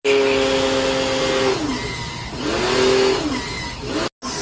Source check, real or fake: real